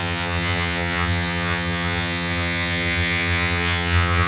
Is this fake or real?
fake